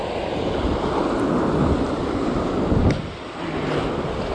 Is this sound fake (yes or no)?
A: no